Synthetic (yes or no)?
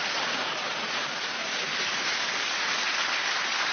no